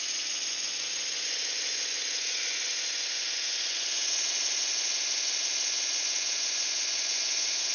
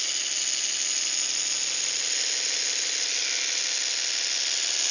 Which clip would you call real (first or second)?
second